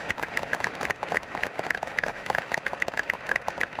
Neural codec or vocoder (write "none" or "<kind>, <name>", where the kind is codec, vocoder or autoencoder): autoencoder, DAC-VAE